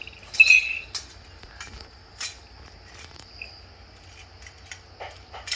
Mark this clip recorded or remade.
recorded